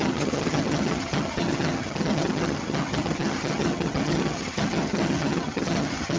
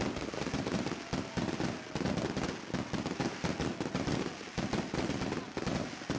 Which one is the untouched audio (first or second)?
second